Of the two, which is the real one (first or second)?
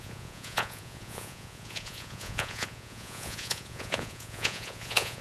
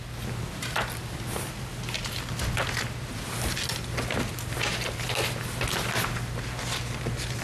second